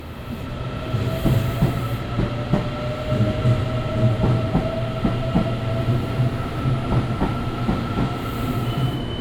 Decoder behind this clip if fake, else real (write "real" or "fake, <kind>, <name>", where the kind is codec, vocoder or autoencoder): real